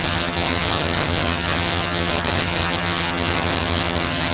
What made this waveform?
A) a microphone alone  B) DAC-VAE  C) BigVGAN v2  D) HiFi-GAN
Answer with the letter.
D